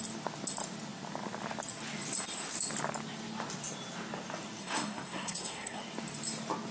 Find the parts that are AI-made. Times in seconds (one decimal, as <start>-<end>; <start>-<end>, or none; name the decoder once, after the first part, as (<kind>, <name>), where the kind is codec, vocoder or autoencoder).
4.6-5.8 (codec, SNAC)